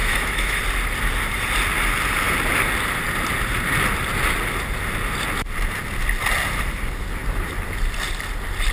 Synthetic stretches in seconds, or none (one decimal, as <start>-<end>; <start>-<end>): 0.0-0.6